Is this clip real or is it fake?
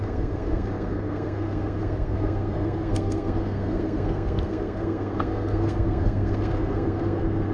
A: fake